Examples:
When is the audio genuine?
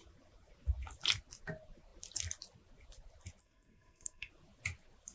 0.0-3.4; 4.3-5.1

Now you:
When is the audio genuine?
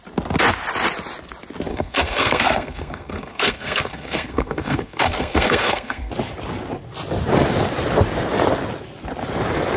0.0-1.7; 6.1-9.8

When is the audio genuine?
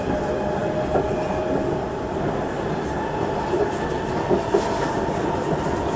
0.0-6.0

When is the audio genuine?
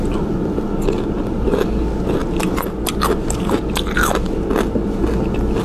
0.0-5.6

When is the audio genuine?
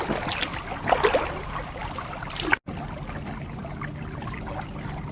0.0-5.1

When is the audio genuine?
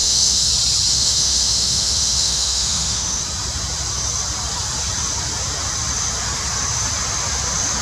0.5-0.9; 3.2-7.8